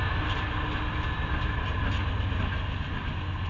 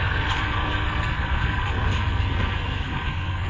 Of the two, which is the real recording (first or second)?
first